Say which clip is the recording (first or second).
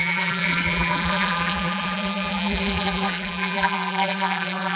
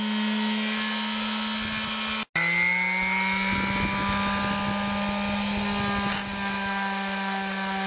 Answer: second